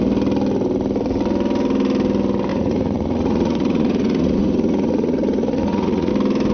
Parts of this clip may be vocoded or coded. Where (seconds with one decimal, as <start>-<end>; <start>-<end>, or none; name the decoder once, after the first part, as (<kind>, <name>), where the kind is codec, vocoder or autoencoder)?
2.5-6.1 (vocoder, Vocos)